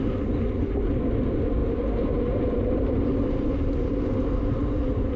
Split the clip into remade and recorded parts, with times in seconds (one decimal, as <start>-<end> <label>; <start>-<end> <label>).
0.0-1.6 recorded; 1.6-3.0 remade; 3.0-5.2 recorded